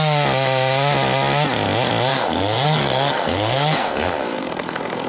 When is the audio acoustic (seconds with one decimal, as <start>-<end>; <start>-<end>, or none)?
0.0-2.1